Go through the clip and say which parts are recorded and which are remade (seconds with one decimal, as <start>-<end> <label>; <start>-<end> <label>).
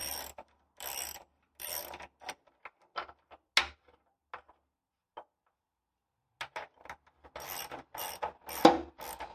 0.0-9.3 recorded